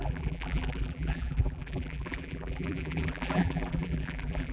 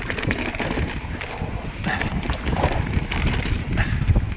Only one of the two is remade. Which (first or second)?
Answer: first